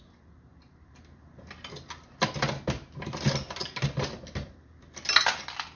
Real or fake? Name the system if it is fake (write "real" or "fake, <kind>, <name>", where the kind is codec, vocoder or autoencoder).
real